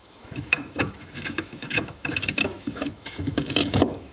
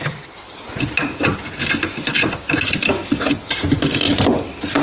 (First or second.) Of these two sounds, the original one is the second